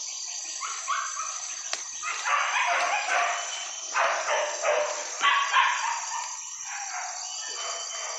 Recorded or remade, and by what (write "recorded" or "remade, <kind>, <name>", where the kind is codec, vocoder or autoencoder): recorded